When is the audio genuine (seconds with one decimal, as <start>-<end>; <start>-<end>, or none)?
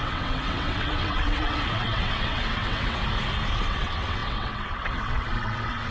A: 3.0-3.6